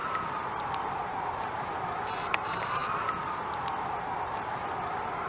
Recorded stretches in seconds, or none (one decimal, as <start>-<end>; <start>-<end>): 2.8-4.8